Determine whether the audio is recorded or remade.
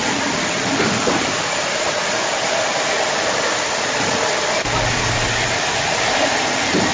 recorded